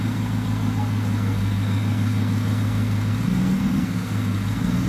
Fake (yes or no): yes